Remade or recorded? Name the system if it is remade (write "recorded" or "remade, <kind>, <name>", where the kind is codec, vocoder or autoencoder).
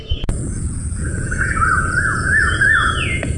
remade, vocoder, Vocos